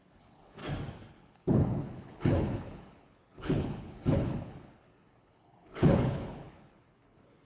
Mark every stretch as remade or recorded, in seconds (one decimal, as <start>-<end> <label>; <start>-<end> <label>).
0.0-0.6 remade; 0.6-1.1 recorded; 1.1-7.5 remade